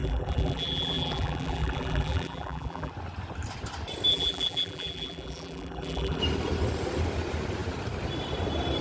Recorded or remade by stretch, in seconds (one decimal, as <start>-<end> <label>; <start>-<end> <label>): 0.0-2.9 remade; 2.9-4.1 recorded; 4.1-6.2 remade; 6.2-8.8 recorded